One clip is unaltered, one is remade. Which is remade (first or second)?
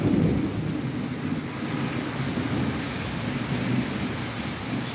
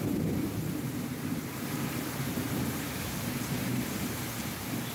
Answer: second